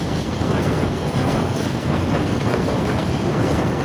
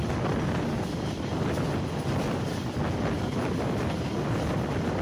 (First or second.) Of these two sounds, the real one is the second